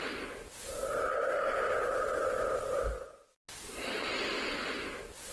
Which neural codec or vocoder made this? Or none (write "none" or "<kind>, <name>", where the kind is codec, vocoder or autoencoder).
none